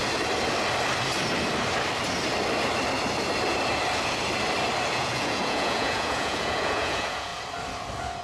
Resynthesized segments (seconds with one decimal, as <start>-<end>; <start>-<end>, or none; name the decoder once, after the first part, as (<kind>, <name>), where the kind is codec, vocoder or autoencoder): 4.9-7.3 (vocoder, Vocos)